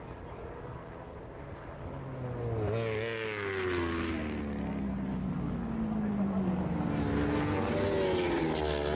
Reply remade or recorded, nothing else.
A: recorded